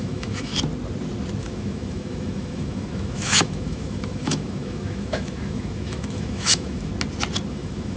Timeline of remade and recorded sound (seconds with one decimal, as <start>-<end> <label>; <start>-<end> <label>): 0.0-0.5 remade; 0.5-1.4 recorded; 1.4-6.9 remade; 6.9-7.5 recorded; 7.5-8.0 remade